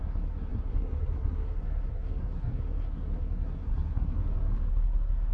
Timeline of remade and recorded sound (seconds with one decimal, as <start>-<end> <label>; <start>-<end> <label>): 0.0-4.2 remade; 4.2-4.7 recorded; 4.7-5.3 remade

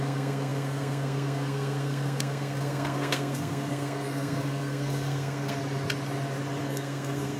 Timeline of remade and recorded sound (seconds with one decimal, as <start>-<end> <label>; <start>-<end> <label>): 0.0-5.6 remade; 5.6-6.6 recorded; 6.6-7.4 remade

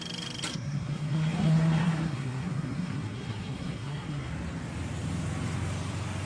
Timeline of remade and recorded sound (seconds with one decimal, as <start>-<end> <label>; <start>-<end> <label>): 0.0-0.5 recorded; 0.5-4.3 remade; 4.3-6.3 recorded

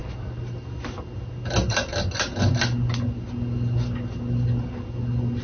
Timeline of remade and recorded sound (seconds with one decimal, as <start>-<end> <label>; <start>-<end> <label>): 0.0-5.4 recorded

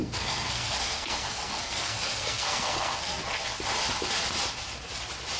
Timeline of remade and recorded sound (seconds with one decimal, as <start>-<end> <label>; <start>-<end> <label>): 0.0-3.2 remade; 3.2-5.4 recorded

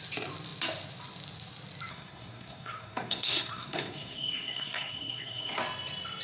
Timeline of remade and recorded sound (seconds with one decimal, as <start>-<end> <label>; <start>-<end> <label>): 0.0-1.9 recorded; 1.9-5.6 remade; 5.6-6.2 recorded

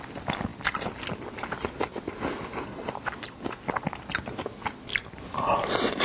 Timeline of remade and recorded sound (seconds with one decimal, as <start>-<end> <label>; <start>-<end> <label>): 0.0-6.0 recorded

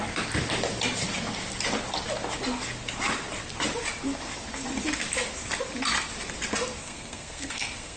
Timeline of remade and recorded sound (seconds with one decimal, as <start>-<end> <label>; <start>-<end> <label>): 0.0-6.8 recorded; 6.8-8.0 remade